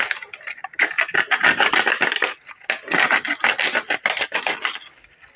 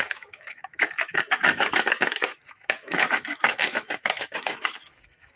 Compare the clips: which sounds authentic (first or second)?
first